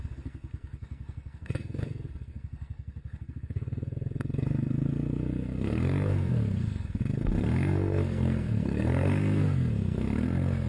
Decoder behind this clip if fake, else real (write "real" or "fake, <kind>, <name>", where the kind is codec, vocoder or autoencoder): fake, codec, SNAC